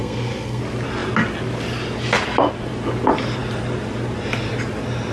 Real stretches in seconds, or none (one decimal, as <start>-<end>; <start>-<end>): 0.6-5.1